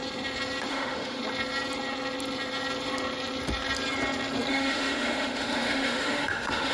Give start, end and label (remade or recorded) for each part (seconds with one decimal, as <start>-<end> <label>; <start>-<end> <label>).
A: 0.0-0.7 recorded; 0.7-1.2 remade; 1.2-4.5 recorded; 4.5-6.7 remade